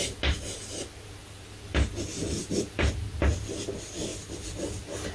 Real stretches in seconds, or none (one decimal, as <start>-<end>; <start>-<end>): 0.0-1.2; 3.5-4.1